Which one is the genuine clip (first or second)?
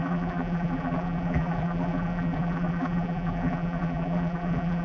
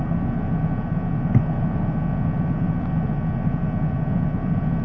second